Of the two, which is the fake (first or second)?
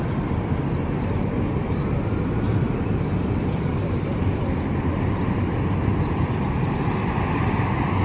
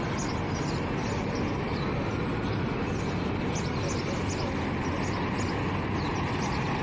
first